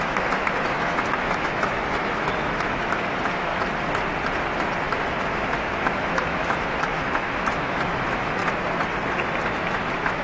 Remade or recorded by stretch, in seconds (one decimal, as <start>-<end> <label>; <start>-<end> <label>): 0.0-3.5 remade; 3.5-5.0 recorded; 5.0-8.4 remade; 8.4-9.7 recorded; 9.7-10.2 remade